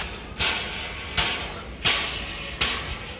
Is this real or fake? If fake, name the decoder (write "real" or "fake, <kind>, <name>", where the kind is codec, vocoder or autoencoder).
real